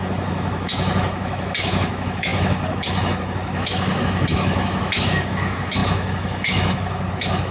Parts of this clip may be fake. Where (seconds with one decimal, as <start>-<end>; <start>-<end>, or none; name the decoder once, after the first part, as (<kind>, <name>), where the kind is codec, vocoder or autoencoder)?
0.0-7.5 (autoencoder, DAC-VAE)